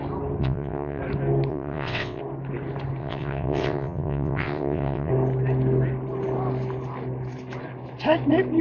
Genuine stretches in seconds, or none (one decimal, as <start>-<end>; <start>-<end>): 0.0-0.4; 1.0-1.5; 2.2-3.0; 5.1-8.6